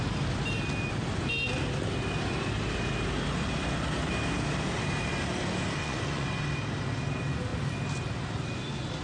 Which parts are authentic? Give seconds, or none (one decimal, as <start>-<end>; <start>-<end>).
0.0-5.8; 6.4-9.0